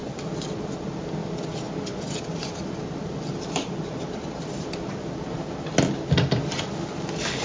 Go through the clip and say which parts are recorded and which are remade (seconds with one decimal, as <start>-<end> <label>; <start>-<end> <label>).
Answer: 0.0-0.6 remade; 0.6-1.2 recorded; 1.2-5.2 remade; 5.2-7.4 recorded